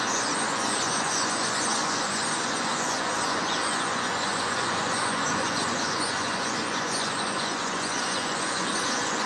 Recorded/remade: remade